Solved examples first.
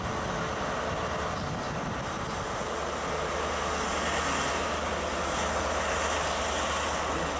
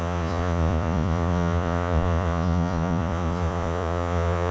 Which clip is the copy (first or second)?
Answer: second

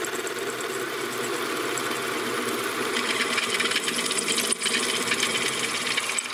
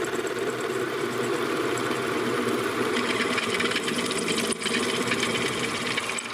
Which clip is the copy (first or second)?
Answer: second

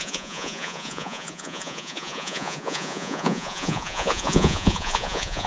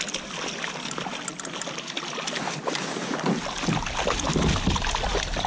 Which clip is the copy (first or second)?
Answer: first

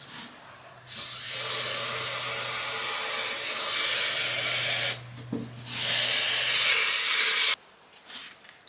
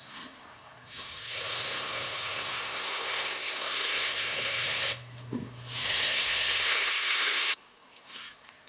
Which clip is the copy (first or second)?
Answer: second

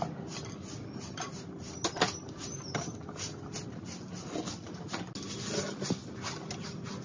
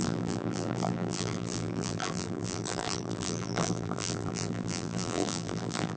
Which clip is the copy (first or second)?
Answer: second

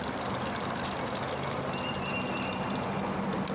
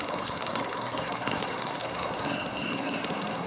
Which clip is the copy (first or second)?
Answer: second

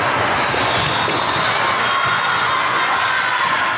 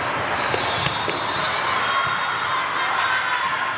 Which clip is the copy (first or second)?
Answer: first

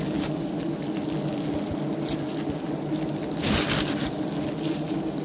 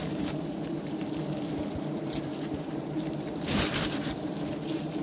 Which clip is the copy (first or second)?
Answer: second